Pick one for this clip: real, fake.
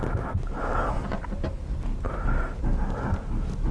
real